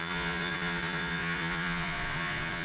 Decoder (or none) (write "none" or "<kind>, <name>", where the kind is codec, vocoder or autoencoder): vocoder, Vocos